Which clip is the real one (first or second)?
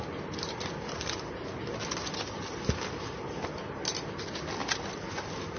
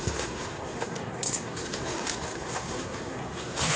first